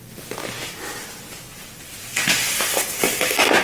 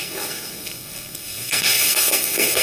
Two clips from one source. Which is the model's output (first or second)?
second